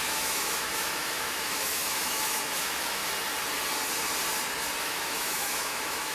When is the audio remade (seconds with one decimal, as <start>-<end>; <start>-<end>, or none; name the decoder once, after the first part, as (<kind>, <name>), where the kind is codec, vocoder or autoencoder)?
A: 0.0-3.0 (autoencoder, DAC-VAE); 4.8-6.1